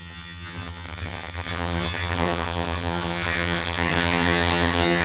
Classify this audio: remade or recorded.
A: remade